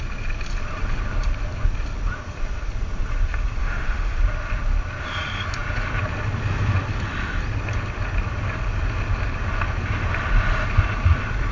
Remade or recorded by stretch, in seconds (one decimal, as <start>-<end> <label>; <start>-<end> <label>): 0.0-3.6 recorded; 3.6-4.2 remade; 4.2-11.5 recorded